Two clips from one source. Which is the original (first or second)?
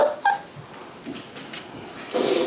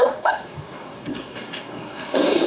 first